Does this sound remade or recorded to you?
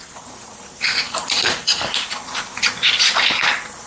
recorded